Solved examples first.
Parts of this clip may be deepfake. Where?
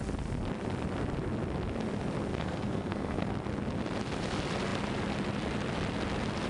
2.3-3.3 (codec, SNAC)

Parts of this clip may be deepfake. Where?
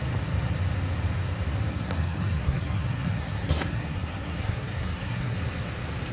1.7-5.4 (codec, SNAC)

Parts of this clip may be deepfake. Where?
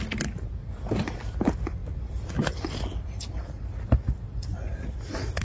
none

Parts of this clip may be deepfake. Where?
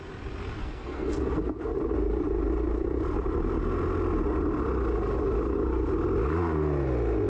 0.6-1.7 (codec, SNAC)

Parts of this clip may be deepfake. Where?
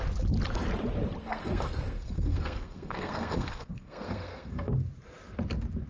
1.2-4.7 (codec, SNAC)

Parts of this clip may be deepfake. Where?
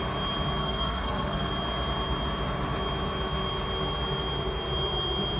0.6-1.5 (codec, SNAC)